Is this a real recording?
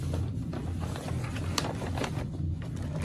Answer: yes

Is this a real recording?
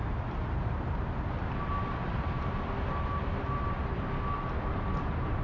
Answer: yes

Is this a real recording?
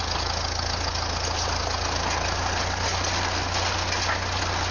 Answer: yes